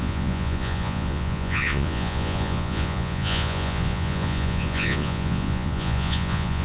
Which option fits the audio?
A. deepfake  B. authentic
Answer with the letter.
A